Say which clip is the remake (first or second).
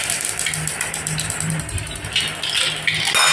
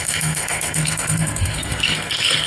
second